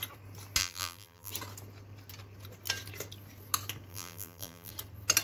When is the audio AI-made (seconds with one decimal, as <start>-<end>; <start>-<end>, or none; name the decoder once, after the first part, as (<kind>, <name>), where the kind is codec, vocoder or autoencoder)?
0.6-1.3 (vocoder, BigVGAN v2); 3.9-4.7